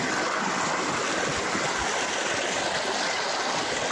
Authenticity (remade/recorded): recorded